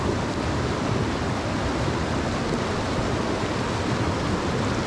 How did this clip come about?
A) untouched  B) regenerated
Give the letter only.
A